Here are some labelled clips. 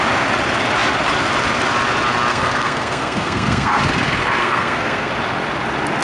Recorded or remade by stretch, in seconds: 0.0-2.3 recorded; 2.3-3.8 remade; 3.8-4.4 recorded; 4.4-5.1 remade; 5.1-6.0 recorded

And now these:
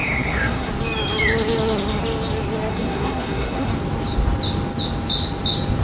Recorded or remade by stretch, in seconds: 0.0-0.7 remade; 0.7-2.7 recorded; 2.7-3.7 remade; 3.7-5.8 recorded

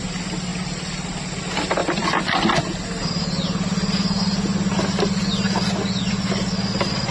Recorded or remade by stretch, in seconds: 0.0-7.1 recorded

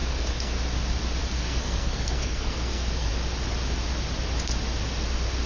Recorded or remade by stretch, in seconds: 0.0-0.6 remade; 0.6-1.2 recorded; 1.2-3.1 remade; 3.1-5.5 recorded

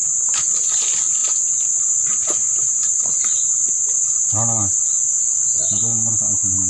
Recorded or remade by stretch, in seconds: 0.0-6.7 recorded

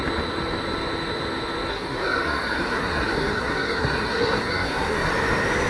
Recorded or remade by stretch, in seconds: 0.0-1.7 recorded; 1.7-5.1 remade; 5.1-5.7 recorded

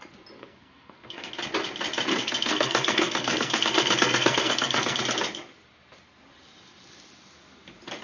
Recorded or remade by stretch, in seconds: 0.0-0.4 recorded; 0.4-1.3 remade; 1.3-2.1 recorded; 2.1-5.0 remade; 5.0-8.0 recorded

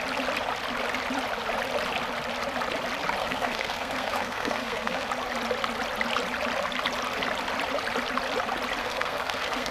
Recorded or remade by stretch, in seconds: 0.0-3.2 recorded; 3.2-5.1 remade; 5.1-8.8 recorded; 8.8-9.7 remade